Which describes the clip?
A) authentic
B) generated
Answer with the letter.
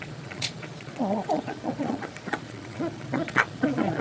B